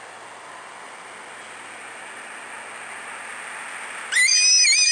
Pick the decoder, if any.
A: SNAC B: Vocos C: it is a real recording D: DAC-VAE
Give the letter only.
C